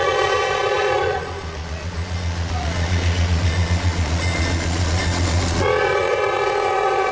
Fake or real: fake